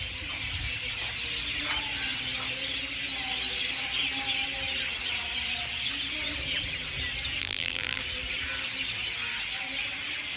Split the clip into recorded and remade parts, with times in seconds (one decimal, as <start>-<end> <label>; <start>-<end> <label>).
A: 0.0-7.4 recorded; 7.4-8.0 remade; 8.0-10.4 recorded

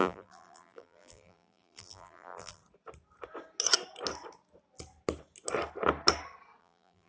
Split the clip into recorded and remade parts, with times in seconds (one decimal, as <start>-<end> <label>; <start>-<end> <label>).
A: 0.0-2.6 remade; 2.6-6.6 recorded; 6.6-7.1 remade

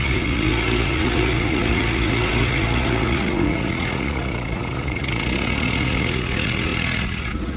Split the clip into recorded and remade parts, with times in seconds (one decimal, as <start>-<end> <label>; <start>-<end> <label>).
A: 0.0-7.6 remade

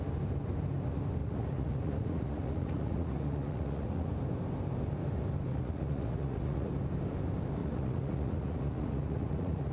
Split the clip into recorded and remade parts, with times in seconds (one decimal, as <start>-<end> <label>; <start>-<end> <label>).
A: 0.0-1.2 recorded; 1.2-4.1 remade; 4.1-5.5 recorded; 5.5-6.7 remade; 6.7-7.6 recorded; 7.6-9.7 remade

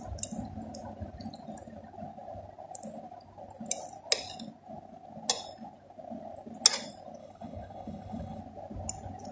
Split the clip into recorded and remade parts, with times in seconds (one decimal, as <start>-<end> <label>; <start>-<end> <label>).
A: 0.0-7.2 recorded; 7.2-8.4 remade; 8.4-9.3 recorded

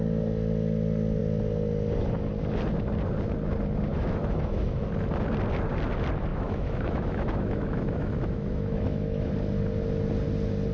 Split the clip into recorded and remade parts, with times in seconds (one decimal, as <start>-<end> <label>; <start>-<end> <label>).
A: 0.0-3.9 recorded; 3.9-4.8 remade; 4.8-6.3 recorded; 6.3-9.3 remade; 9.3-10.7 recorded